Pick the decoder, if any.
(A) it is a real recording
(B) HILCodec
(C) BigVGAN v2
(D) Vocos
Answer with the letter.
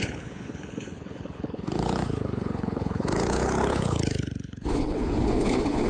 B